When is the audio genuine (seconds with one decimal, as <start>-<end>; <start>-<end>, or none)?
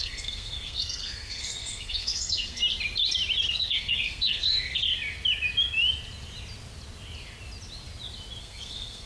2.6-3.5; 4.9-8.4